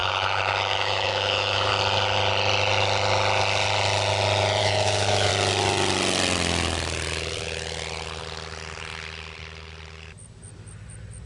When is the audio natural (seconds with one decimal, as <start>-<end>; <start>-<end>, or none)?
1.7-4.6; 5.3-11.3